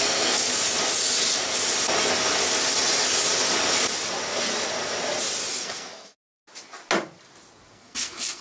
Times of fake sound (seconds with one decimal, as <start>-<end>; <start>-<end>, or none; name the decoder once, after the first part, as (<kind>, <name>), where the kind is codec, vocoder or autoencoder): 0.0-0.5 (codec, SNAC); 5.5-6.4; 7.7-8.4